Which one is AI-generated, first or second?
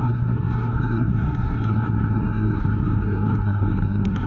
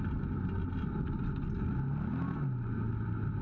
first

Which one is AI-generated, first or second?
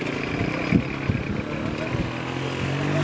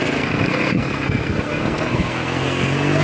second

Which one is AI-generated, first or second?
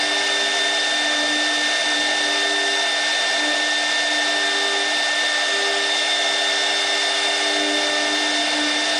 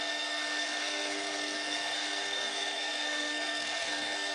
second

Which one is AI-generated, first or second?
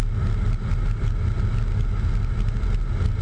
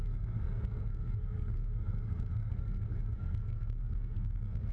second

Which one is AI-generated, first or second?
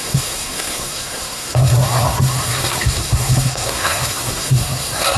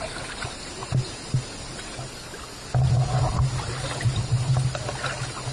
first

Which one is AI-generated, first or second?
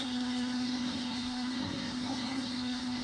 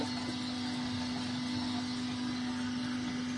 first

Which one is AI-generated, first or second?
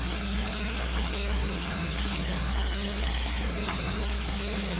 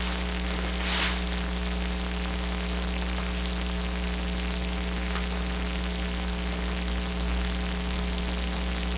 first